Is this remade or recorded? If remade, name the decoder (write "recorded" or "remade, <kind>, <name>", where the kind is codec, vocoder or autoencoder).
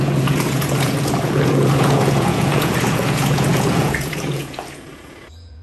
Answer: remade, vocoder, Vocos